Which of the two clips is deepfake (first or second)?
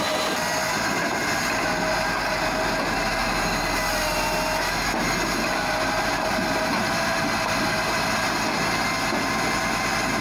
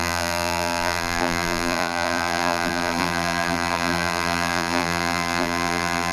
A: second